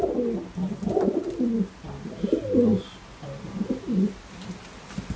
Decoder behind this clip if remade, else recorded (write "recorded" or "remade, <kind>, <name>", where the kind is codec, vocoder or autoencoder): recorded